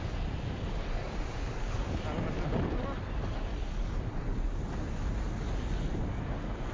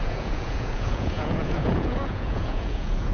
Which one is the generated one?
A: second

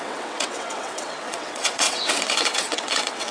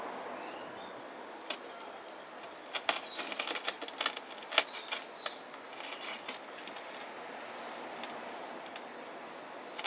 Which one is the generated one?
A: first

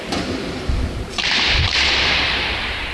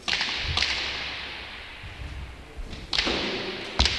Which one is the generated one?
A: first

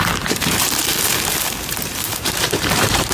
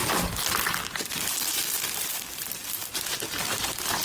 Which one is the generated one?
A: first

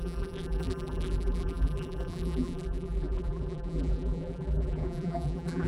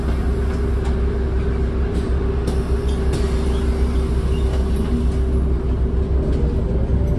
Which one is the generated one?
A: first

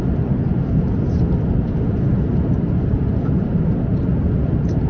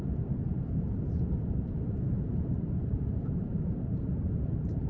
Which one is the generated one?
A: second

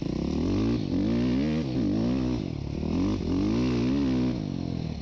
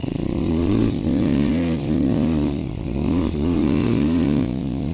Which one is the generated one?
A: second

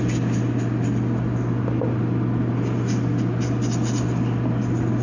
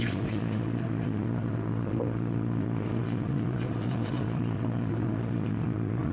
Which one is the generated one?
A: second